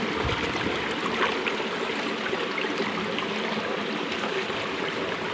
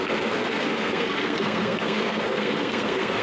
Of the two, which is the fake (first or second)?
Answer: second